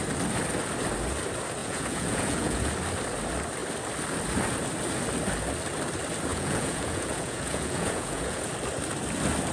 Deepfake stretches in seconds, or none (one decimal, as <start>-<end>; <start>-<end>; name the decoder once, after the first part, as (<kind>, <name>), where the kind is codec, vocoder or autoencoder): 1.6-2.7 (vocoder, Vocos); 6.3-8.5